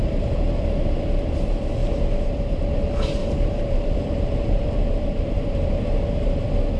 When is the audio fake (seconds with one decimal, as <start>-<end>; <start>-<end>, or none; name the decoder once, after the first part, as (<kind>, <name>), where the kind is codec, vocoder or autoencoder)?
1.8-2.4 (vocoder, BigVGAN v2); 3.2-5.7